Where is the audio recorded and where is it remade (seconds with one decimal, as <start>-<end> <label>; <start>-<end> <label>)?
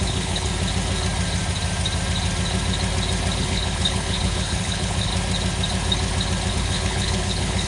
0.0-0.5 remade; 0.5-3.4 recorded; 3.4-5.1 remade; 5.1-6.5 recorded; 6.5-7.7 remade